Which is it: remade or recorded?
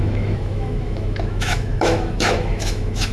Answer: remade